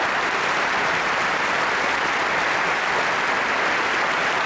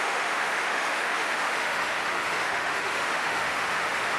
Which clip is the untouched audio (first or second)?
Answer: first